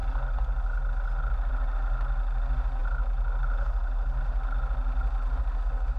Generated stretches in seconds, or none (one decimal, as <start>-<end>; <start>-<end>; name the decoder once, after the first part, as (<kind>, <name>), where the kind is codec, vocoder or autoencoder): none